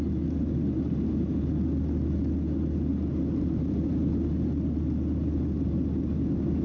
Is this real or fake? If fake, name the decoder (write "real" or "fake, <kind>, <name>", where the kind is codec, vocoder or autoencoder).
real